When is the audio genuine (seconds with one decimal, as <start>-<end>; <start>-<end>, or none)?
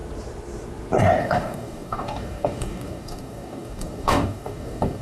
0.0-1.2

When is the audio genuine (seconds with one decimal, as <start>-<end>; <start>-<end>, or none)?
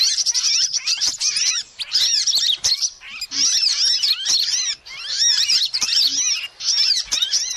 6.1-6.7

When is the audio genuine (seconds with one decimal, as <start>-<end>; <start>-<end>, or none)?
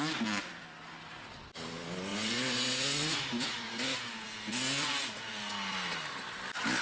0.0-2.1; 3.3-6.8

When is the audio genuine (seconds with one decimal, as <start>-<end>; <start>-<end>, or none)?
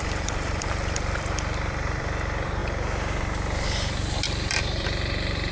2.6-4.5